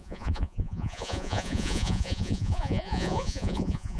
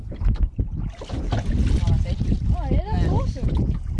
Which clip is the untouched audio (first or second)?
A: second